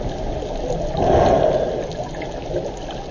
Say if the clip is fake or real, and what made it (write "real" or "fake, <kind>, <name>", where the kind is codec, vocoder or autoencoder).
real